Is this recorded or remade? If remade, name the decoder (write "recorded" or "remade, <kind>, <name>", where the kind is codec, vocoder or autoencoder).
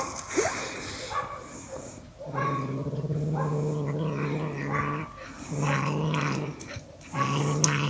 recorded